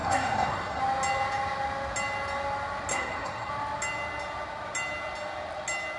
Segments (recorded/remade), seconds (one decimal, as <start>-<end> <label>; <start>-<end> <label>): 0.0-0.8 remade; 0.8-2.9 recorded; 2.9-3.5 remade; 3.5-6.0 recorded